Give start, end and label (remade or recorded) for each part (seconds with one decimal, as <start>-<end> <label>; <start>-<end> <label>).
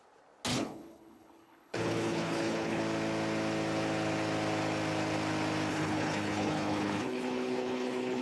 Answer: 0.0-0.5 recorded; 0.5-2.8 remade; 2.8-5.7 recorded; 5.7-8.2 remade